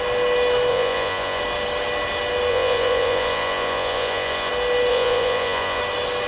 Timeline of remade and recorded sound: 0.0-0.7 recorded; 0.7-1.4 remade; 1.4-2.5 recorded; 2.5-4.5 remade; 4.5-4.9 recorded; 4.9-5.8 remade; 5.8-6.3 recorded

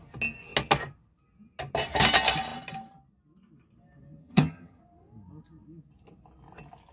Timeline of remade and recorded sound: 0.0-4.2 recorded; 4.2-4.8 remade; 4.8-6.9 recorded